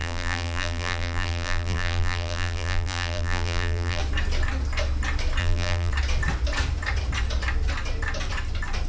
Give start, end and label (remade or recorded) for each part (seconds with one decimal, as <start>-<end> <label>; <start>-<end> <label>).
0.0-4.0 remade; 4.0-5.4 recorded; 5.4-5.9 remade; 5.9-8.9 recorded